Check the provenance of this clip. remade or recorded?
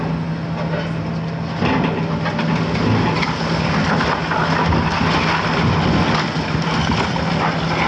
recorded